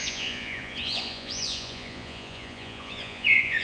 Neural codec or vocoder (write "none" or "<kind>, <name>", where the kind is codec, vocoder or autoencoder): vocoder, Vocos